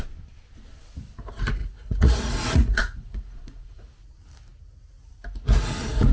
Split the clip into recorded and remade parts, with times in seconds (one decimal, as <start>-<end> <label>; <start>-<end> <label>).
0.0-1.6 recorded; 1.6-3.9 remade; 3.9-6.1 recorded